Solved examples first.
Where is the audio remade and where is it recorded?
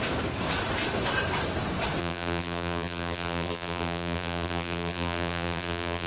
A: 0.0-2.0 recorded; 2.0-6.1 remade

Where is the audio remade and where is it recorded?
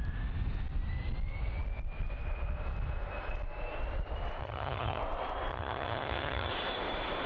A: 0.0-4.4 recorded; 4.4-5.0 remade; 5.0-5.5 recorded; 5.5-6.5 remade; 6.5-7.3 recorded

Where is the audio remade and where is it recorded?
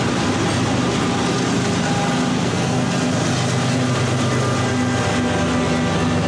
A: 0.0-2.3 recorded; 2.3-2.9 remade; 2.9-6.3 recorded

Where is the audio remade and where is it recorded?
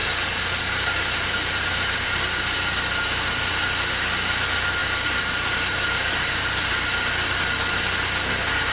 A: 0.0-2.2 remade; 2.2-4.8 recorded; 4.8-6.5 remade; 6.5-8.7 recorded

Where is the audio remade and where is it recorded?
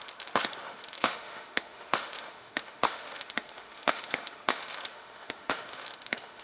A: 0.0-6.4 remade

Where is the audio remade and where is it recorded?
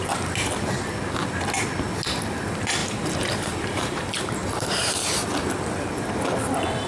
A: 0.0-2.8 recorded; 2.8-4.9 remade; 4.9-6.9 recorded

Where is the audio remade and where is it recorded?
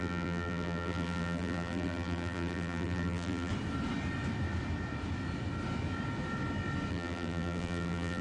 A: 0.0-3.5 remade; 3.5-6.9 recorded; 6.9-8.2 remade